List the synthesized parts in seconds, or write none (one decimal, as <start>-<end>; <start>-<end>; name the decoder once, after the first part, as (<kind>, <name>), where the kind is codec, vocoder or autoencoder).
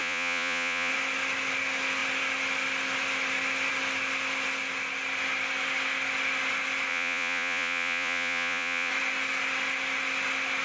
0.0-0.9 (vocoder, Vocos); 6.9-8.9